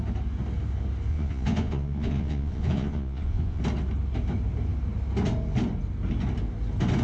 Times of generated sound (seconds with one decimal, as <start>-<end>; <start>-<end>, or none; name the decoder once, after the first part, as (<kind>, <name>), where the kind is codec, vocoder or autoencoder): 1.1-3.6 (vocoder, Vocos)